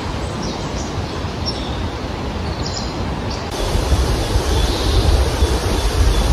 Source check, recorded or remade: recorded